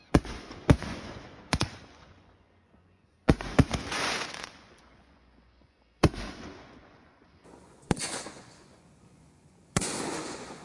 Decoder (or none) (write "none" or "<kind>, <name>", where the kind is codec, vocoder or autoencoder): vocoder, Vocos